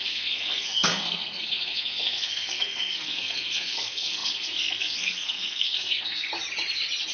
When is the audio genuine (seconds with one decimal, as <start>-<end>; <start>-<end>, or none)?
6.3-7.1